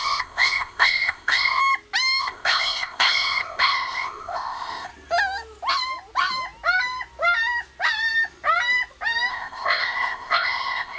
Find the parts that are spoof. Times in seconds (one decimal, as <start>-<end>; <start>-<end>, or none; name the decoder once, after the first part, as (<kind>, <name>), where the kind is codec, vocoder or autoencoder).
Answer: 0.0-1.6 (codec, ZipCodec); 2.2-4.9; 9.3-11.0